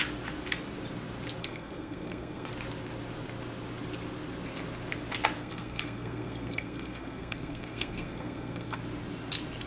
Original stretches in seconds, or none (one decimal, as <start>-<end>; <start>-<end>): 0.0-1.4; 2.5-5.4; 8.8-9.7